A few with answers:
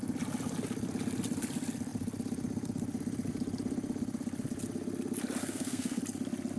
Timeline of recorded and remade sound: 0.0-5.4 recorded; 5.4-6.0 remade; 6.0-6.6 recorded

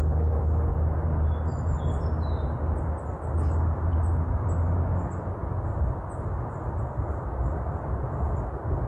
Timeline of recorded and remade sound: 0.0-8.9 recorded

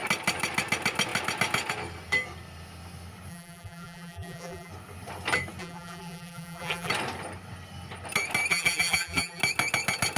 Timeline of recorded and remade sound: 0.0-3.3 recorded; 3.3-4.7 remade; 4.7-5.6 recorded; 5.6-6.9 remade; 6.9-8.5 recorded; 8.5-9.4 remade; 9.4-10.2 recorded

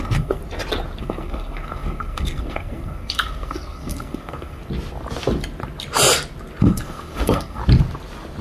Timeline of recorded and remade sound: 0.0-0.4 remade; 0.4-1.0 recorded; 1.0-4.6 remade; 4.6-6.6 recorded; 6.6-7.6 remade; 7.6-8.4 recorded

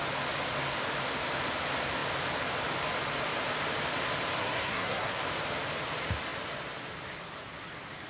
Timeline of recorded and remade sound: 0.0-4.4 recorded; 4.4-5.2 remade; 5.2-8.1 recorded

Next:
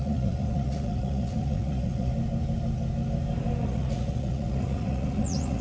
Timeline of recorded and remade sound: 0.0-2.1 remade; 2.1-3.6 recorded; 3.6-5.6 remade